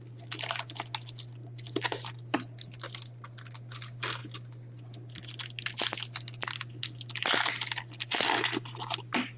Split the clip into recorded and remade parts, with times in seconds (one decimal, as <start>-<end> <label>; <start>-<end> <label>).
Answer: 0.0-9.4 recorded